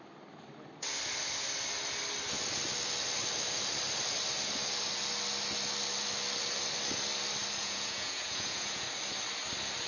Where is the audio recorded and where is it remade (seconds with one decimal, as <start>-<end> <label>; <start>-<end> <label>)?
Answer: 0.0-7.6 recorded; 7.6-8.8 remade; 8.8-9.9 recorded